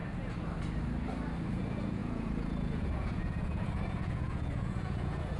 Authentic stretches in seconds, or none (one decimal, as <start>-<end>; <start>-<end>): 0.0-1.5